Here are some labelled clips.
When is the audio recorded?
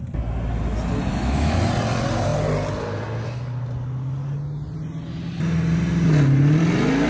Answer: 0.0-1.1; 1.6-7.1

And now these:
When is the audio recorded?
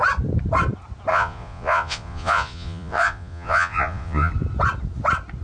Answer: 0.0-1.1; 4.3-5.4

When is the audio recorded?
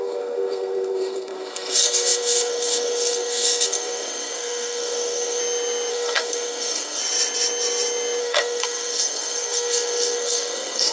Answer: 5.4-5.9; 7.0-8.2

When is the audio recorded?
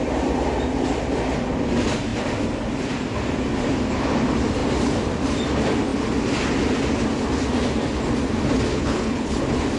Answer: 0.0-8.7; 9.4-9.8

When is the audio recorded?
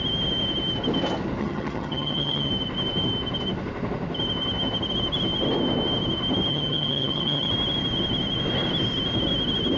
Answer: 0.0-1.4; 2.5-6.5; 7.5-9.8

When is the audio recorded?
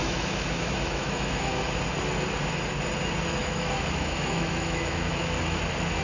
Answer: 1.6-3.4; 5.6-6.0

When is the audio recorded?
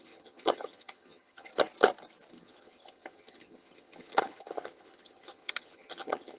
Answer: 1.5-2.3